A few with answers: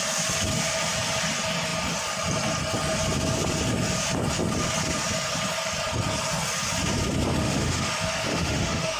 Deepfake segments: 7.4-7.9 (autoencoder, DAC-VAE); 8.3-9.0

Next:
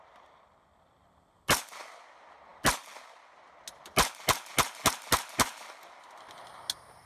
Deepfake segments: none

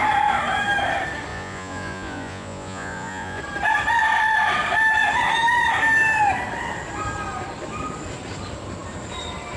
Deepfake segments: 1.3-3.4 (vocoder, Vocos)

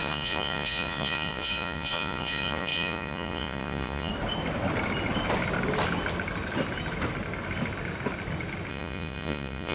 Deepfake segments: 0.0-4.1 (vocoder, Vocos); 8.7-9.7

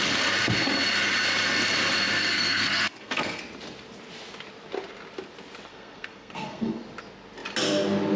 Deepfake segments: 2.1-3.4 (codec, SNAC); 5.7-6.8

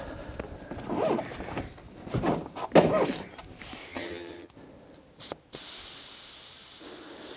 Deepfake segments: 3.9-4.5 (vocoder, HiFi-GAN)

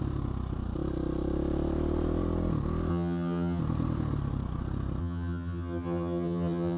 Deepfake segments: 2.9-3.6 (vocoder, HiFi-GAN); 5.0-6.8